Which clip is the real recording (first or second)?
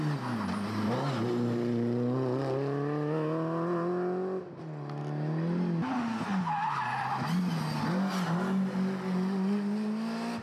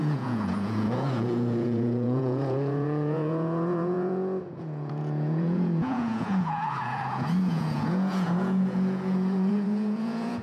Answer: first